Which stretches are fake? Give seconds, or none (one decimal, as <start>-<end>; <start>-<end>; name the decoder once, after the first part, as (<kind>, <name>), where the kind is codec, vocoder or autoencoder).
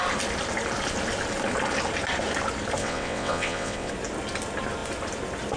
2.8-3.9 (vocoder, WaveNeXt)